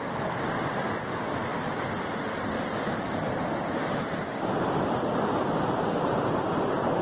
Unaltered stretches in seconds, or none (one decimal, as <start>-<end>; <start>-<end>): 0.0-7.0